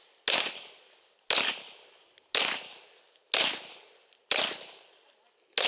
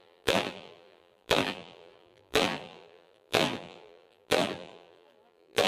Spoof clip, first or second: second